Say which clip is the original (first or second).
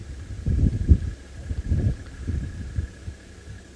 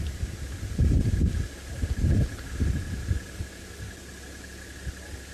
second